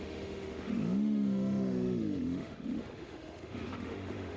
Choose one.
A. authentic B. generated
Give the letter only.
B